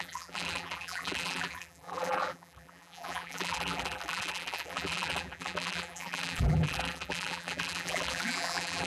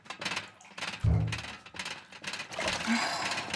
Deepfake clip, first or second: first